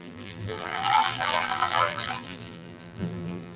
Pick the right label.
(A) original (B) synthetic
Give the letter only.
B